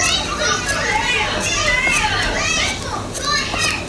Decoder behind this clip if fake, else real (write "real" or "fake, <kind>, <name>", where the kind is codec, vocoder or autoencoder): real